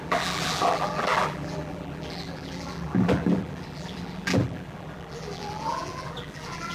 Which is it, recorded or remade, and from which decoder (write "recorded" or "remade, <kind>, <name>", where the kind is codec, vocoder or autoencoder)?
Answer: remade, vocoder, BigVGAN v2